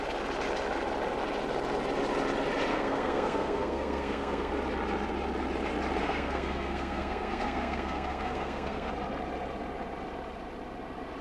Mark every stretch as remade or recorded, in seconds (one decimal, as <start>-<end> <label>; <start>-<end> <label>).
0.0-2.7 recorded; 2.7-4.5 remade; 4.5-6.0 recorded; 6.0-8.9 remade; 8.9-11.2 recorded